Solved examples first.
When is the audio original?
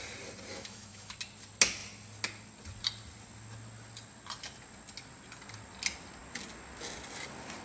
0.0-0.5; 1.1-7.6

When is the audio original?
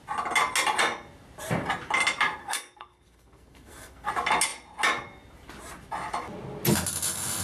0.0-2.4; 4.1-7.4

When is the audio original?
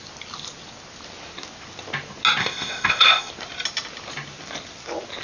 0.0-2.4; 3.3-5.2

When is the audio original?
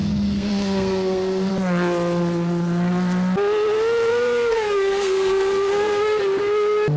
1.5-4.1; 6.2-7.0